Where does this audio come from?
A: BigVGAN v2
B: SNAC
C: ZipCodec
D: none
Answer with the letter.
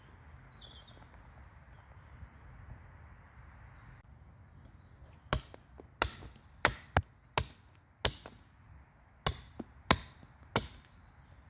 D